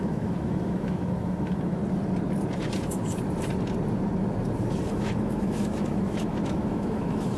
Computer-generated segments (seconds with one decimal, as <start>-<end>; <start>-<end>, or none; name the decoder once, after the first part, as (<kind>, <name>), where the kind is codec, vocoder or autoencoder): 0.0-1.8 (autoencoder, DAC-VAE); 4.9-7.4